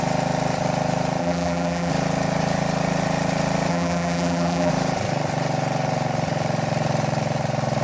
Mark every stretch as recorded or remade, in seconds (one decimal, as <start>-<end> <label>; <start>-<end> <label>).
0.0-1.2 recorded; 1.2-1.9 remade; 1.9-3.7 recorded; 3.7-4.7 remade; 4.7-7.8 recorded